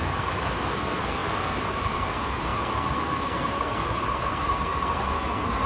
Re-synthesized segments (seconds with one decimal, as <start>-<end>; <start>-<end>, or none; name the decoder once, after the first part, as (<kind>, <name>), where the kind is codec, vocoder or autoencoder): 0.0-5.7 (codec, SNAC)